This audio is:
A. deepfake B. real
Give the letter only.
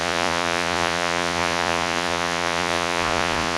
A